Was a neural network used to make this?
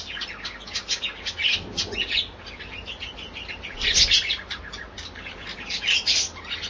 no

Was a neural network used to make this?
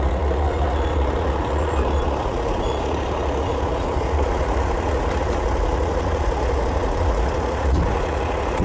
yes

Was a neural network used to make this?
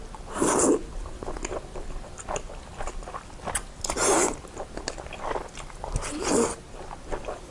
no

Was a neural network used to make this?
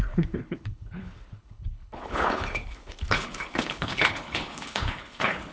yes